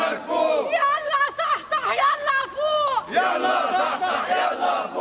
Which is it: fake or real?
real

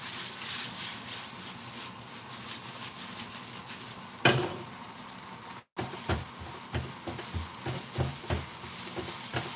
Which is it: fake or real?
real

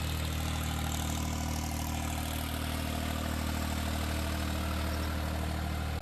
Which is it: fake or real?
real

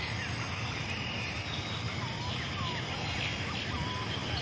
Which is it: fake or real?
real